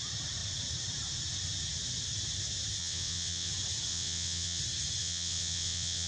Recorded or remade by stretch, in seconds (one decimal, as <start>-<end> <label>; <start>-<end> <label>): 0.0-2.8 recorded; 2.8-3.5 remade; 3.5-3.9 recorded; 3.9-4.6 remade; 4.6-5.0 recorded; 5.0-6.1 remade